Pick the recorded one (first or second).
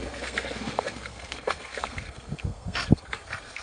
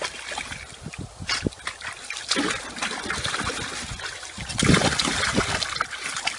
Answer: second